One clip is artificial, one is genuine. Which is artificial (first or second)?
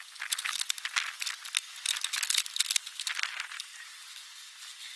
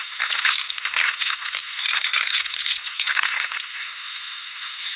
second